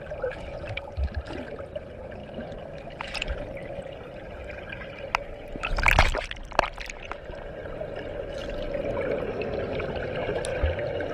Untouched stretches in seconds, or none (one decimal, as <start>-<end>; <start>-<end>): 8.4-9.1